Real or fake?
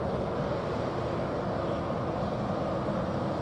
real